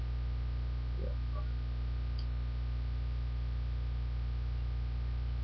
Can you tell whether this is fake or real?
real